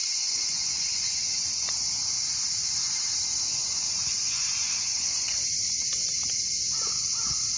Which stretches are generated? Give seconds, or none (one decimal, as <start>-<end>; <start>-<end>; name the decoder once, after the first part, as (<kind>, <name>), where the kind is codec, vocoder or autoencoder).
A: 0.0-1.7 (vocoder, Vocos); 3.5-5.5